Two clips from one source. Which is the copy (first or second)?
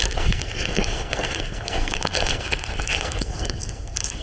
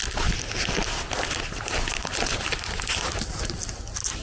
first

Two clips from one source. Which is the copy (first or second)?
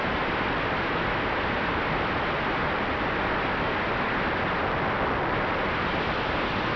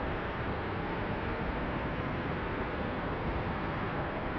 second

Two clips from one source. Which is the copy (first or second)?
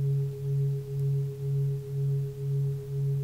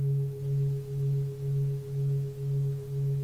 second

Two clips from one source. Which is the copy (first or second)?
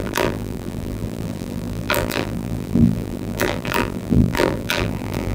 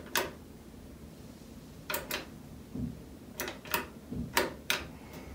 first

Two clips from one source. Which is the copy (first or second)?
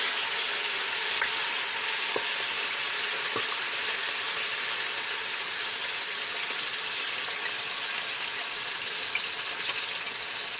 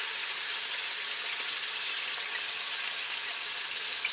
second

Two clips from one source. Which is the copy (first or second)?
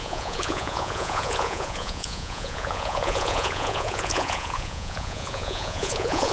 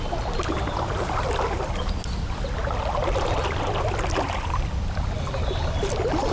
first